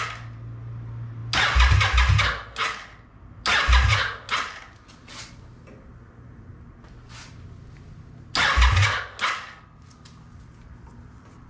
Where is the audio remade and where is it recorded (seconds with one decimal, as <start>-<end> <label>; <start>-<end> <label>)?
0.0-11.5 recorded